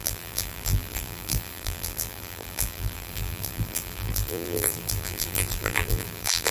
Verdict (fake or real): fake